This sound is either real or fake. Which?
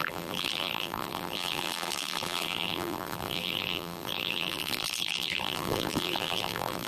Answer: fake